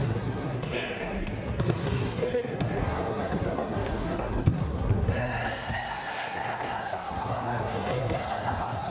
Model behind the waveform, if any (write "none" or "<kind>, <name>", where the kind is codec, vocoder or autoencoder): codec, SNAC